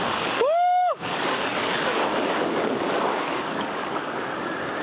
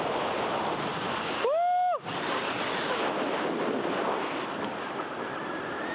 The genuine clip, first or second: second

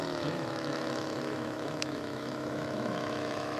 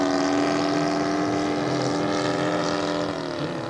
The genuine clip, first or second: second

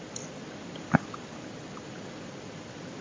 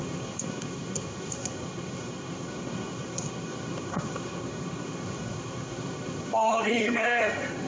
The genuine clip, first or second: first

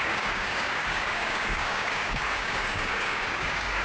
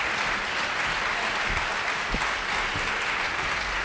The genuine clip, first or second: second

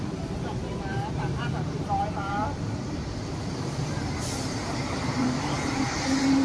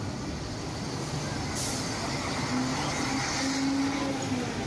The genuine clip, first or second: second